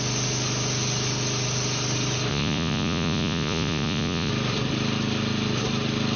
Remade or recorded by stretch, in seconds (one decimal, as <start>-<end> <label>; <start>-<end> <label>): 0.0-2.3 recorded; 2.3-4.3 remade; 4.3-6.2 recorded